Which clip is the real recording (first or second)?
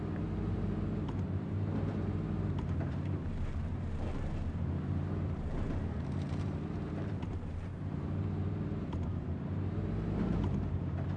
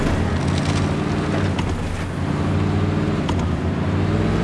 second